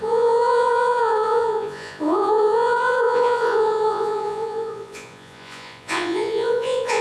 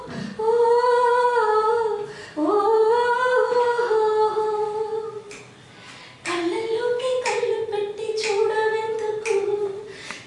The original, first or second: second